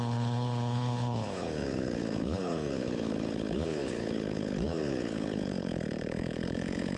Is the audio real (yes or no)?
no